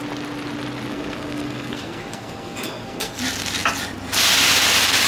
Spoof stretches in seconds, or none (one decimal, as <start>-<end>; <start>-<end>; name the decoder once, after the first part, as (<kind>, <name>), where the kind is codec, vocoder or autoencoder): 0.9-3.2 (codec, SNAC)